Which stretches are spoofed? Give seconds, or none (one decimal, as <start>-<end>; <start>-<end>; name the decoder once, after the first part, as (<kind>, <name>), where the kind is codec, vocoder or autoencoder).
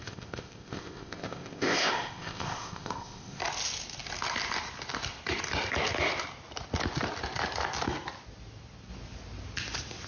0.0-3.4 (codec, ZipCodec)